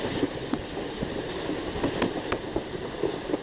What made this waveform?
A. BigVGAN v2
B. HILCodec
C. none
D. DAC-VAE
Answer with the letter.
C